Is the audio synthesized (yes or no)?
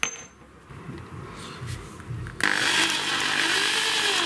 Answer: no